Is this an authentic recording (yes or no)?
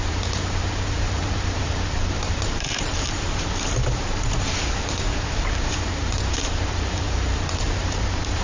no